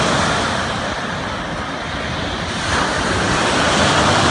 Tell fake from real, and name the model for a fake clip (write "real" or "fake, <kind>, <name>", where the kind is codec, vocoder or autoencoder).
real